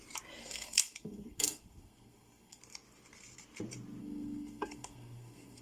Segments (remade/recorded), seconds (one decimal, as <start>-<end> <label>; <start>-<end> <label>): 0.0-0.4 recorded; 0.4-2.6 remade; 2.6-4.0 recorded; 4.0-5.6 remade